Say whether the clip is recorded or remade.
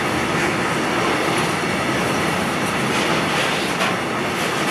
recorded